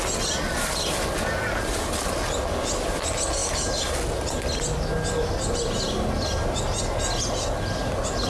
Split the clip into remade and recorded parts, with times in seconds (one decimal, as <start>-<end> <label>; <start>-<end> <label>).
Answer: 0.0-8.3 recorded